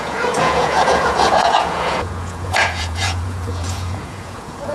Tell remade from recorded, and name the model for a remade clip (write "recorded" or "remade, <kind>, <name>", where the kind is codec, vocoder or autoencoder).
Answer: remade, vocoder, Vocos